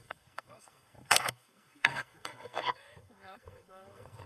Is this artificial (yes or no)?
yes